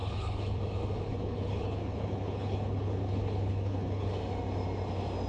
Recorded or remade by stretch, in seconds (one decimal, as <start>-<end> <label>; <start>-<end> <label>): 0.0-0.6 remade; 0.6-1.1 recorded; 1.1-4.1 remade; 4.1-5.3 recorded